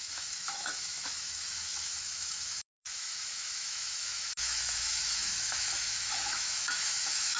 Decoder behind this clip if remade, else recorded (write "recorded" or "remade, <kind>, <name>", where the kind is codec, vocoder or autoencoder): remade, autoencoder, DAC-VAE